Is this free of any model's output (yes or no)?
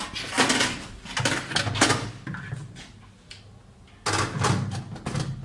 yes